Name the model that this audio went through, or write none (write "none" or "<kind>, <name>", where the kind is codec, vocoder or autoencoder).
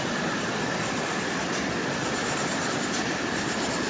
vocoder, BigVGAN v2